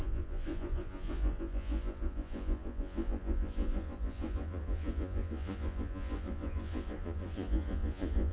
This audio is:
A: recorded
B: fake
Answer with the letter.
B